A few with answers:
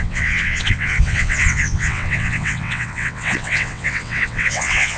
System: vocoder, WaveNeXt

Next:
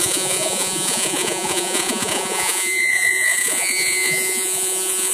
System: vocoder, Vocos